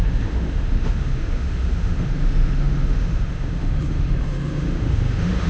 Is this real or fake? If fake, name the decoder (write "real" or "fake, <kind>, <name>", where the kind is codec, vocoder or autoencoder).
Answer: fake, autoencoder, DAC-VAE